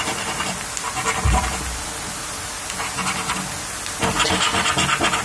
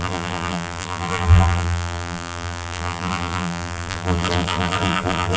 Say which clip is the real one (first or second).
first